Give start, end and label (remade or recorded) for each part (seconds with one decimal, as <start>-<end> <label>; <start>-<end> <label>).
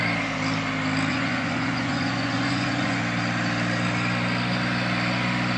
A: 0.0-1.1 recorded; 1.1-3.0 remade; 3.0-5.6 recorded